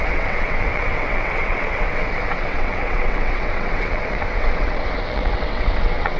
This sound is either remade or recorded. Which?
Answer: remade